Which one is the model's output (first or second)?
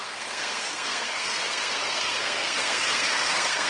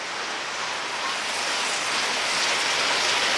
first